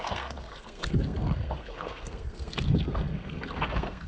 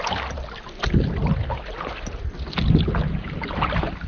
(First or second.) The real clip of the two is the second